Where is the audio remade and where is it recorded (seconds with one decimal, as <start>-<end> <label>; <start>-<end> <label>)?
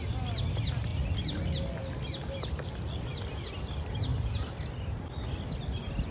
0.0-6.1 recorded